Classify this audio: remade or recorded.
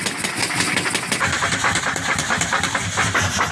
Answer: recorded